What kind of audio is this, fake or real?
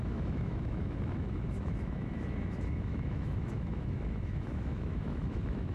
fake